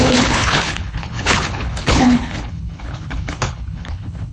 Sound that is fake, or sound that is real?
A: fake